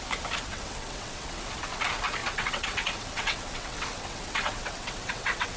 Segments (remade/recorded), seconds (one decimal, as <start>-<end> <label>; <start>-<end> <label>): 0.0-0.5 recorded; 0.5-1.5 remade; 1.5-2.2 recorded; 2.2-5.6 remade